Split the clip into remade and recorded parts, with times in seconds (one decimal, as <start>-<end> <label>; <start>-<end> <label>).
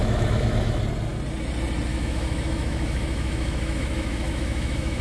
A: 0.0-0.8 remade; 0.8-1.9 recorded; 1.9-5.0 remade